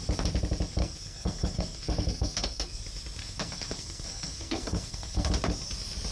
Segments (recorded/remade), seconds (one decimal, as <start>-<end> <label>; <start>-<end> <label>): 0.0-0.8 recorded; 0.8-2.8 remade; 2.8-3.2 recorded; 3.2-5.3 remade; 5.3-6.1 recorded